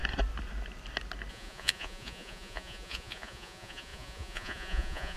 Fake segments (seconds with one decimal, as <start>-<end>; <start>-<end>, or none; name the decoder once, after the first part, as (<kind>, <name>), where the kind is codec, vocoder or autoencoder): 1.3-5.2 (vocoder, Vocos)